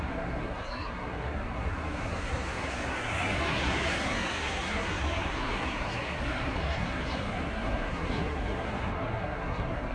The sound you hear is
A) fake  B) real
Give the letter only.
A